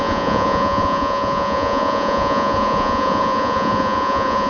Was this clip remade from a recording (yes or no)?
yes